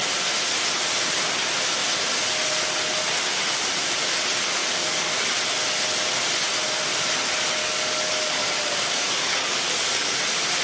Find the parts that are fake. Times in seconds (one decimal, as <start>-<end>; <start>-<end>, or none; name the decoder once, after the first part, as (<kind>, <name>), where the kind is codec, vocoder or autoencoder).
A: 4.6-5.3 (codec, DAC); 7.6-10.1